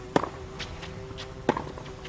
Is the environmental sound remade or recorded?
recorded